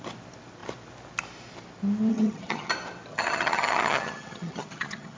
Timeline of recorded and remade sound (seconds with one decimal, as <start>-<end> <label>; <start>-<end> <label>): 0.0-2.1 recorded; 2.1-2.7 remade; 2.7-3.1 recorded; 3.1-5.2 remade